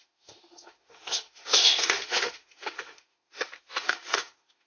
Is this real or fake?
fake